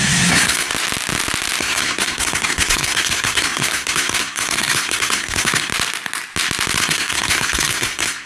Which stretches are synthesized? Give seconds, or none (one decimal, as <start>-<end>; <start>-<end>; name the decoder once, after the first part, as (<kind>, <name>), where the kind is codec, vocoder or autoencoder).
0.0-0.7 (codec, SNAC); 1.6-5.7; 6.8-8.3